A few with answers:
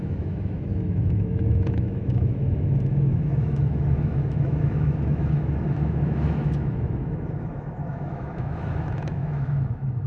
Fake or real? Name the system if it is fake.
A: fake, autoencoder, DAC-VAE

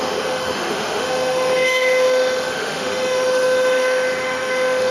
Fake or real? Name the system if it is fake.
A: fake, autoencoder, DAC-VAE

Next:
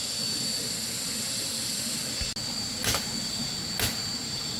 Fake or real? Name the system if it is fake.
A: real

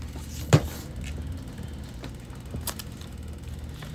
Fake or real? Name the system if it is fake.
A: real